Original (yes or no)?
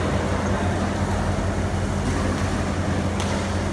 yes